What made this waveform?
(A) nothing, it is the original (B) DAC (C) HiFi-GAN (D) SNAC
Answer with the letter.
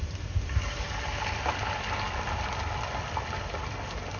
A